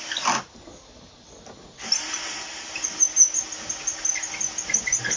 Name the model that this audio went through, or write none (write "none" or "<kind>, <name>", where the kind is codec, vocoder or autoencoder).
none